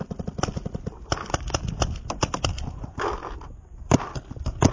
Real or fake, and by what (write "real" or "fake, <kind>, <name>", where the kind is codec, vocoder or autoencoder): real